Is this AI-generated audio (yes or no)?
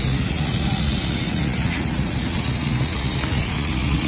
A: yes